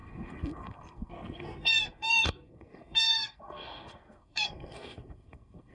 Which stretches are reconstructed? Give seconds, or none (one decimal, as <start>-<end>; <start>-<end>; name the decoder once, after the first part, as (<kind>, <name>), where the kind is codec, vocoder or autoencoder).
0.0-5.7 (codec, SNAC)